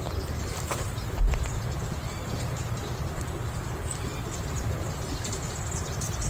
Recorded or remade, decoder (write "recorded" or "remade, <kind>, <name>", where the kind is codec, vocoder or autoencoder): remade, vocoder, BigVGAN v2